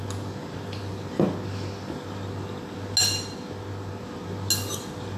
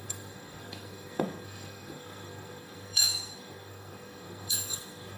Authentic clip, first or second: first